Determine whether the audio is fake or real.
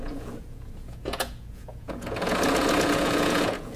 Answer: fake